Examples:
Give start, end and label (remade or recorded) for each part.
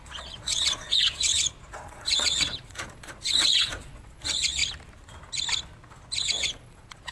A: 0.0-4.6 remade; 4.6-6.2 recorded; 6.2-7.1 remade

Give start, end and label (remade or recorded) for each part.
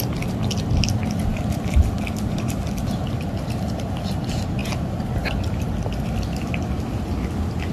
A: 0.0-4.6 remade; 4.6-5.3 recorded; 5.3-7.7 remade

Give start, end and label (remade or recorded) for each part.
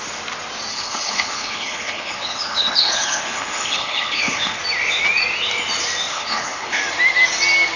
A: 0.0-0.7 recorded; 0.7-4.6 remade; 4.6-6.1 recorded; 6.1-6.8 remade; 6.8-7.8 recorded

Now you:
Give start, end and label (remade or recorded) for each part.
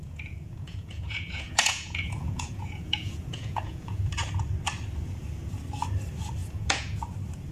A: 0.0-4.0 remade; 4.0-6.4 recorded; 6.4-7.0 remade; 7.0-7.5 recorded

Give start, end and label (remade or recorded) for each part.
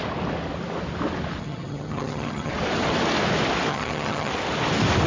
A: 0.0-1.4 recorded; 1.4-2.5 remade; 2.5-3.7 recorded; 3.7-4.3 remade; 4.3-5.1 recorded